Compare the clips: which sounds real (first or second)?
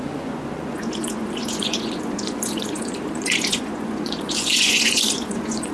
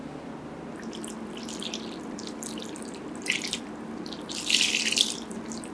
second